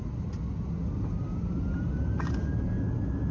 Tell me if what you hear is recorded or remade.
recorded